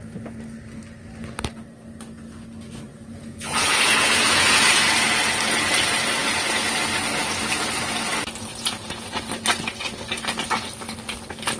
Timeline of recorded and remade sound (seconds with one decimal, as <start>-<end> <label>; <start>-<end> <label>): 0.0-2.9 recorded; 2.9-4.9 remade; 4.9-6.2 recorded; 6.2-6.7 remade; 6.7-8.5 recorded; 8.5-9.2 remade; 9.2-11.6 recorded